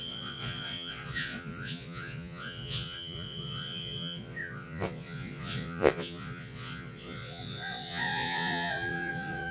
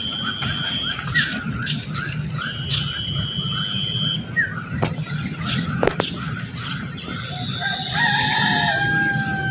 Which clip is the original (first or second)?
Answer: second